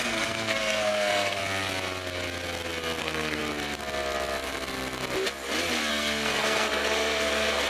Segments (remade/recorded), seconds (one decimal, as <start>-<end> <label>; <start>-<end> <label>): 0.0-1.4 remade; 1.4-3.0 recorded; 3.0-3.4 remade; 3.4-5.9 recorded; 5.9-7.7 remade

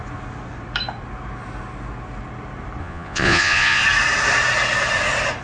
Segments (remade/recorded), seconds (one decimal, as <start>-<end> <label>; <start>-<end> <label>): 0.0-2.8 recorded; 2.8-3.8 remade; 3.8-5.4 recorded

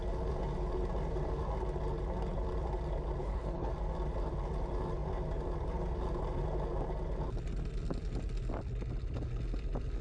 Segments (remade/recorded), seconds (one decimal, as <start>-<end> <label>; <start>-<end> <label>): 0.0-3.2 recorded; 3.2-3.7 remade; 3.7-10.0 recorded

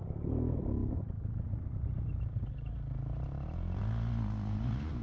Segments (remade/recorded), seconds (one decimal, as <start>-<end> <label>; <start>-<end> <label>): 0.0-5.0 recorded

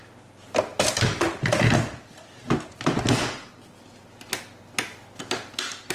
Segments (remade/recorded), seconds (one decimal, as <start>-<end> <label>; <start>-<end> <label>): 0.0-5.9 recorded